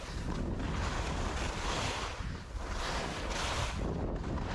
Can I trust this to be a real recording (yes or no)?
yes